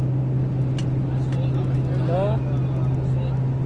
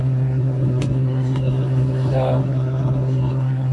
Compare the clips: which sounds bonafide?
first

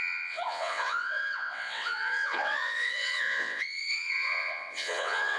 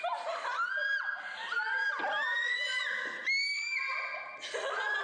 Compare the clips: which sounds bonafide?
second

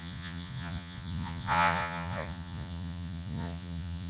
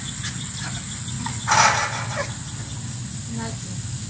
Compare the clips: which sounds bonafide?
second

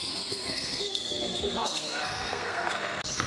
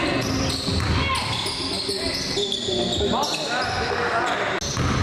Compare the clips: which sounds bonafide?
second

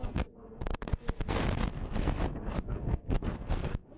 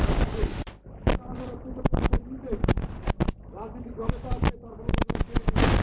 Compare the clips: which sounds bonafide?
second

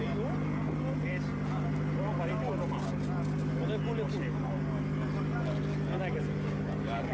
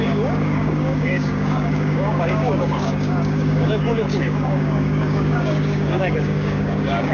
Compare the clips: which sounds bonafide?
first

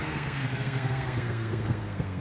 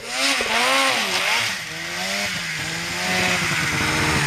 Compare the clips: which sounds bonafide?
second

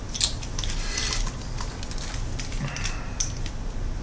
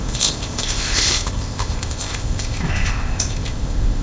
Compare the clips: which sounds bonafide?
first